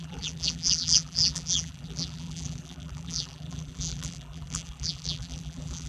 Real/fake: fake